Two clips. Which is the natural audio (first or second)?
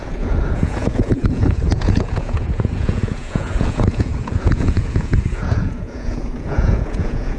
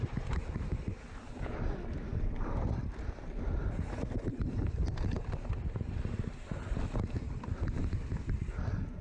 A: second